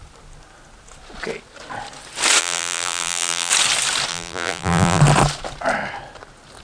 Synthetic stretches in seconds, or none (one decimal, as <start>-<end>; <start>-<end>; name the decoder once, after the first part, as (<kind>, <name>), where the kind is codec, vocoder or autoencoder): 2.4-3.5 (vocoder, BigVGAN v2); 4.1-5.0